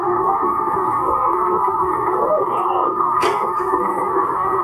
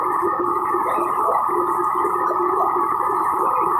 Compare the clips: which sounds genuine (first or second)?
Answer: second